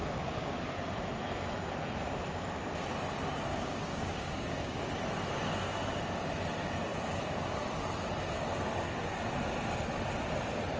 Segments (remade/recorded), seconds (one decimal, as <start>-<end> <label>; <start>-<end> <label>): 0.0-0.6 remade; 0.6-3.5 recorded; 3.5-4.9 remade; 4.9-10.8 recorded